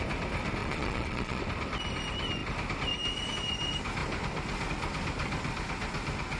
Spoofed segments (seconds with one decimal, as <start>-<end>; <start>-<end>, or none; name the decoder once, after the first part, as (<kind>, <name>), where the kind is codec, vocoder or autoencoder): 0.6-1.4 (vocoder, Vocos)

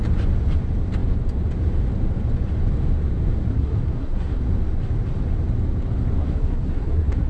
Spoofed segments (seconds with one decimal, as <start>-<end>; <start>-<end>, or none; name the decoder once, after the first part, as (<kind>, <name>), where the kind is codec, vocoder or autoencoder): 3.5-4.4 (codec, SNAC); 6.2-7.3